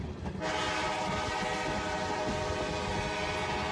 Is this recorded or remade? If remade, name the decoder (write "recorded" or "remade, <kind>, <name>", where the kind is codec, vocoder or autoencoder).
recorded